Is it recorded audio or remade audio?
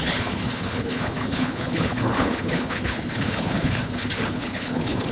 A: remade